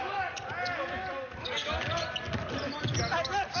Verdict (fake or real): real